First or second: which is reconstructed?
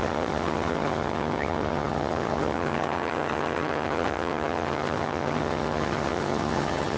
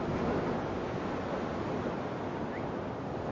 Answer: first